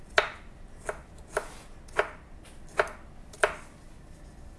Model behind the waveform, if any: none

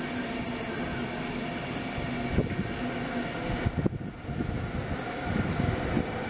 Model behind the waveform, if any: none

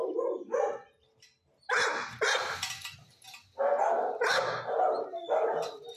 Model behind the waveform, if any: none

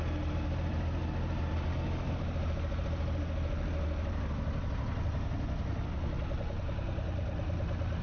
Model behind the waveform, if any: none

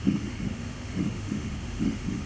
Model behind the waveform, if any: autoencoder, DAC-VAE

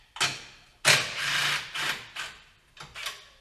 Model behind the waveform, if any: none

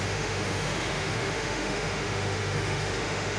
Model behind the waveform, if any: autoencoder, DAC-VAE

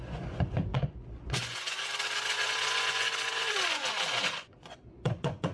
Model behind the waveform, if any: vocoder, Vocos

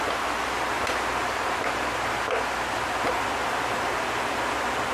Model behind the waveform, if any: none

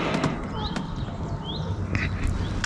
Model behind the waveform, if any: none